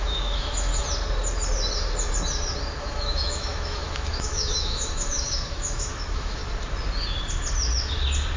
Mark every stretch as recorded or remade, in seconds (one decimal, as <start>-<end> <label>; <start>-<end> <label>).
0.0-0.7 remade; 0.7-2.8 recorded; 2.8-6.4 remade; 6.4-8.4 recorded